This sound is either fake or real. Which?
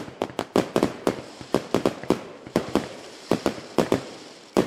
fake